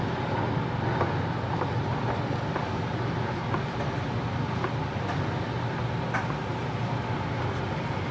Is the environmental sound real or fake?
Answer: real